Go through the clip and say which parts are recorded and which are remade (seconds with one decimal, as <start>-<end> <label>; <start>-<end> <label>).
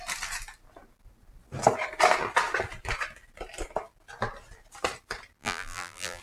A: 0.0-5.4 recorded; 5.4-6.2 remade